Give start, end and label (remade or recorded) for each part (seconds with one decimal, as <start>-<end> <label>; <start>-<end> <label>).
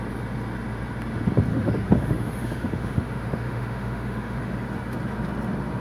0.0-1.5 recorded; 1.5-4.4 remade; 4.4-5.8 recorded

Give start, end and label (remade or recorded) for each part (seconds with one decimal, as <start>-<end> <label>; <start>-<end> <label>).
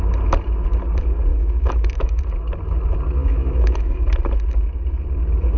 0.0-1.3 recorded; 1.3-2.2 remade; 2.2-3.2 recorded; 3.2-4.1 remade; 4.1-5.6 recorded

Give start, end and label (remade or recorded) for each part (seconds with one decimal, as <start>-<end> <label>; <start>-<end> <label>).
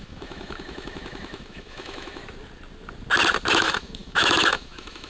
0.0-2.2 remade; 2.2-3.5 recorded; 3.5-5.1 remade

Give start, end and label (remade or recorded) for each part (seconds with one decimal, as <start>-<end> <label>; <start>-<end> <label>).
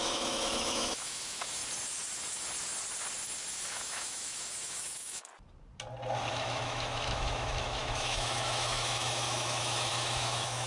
0.0-1.6 remade; 1.6-3.5 recorded; 3.5-5.3 remade; 5.3-6.3 recorded; 6.3-10.7 remade